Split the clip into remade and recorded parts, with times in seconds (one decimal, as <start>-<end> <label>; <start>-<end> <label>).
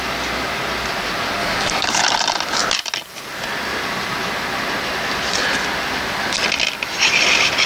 0.0-1.4 recorded; 1.4-2.0 remade; 2.0-7.7 recorded